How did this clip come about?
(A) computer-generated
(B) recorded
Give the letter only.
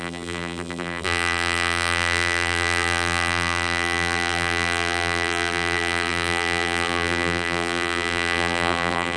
A